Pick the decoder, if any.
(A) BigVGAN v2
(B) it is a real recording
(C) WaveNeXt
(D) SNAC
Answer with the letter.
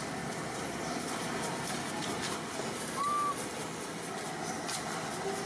B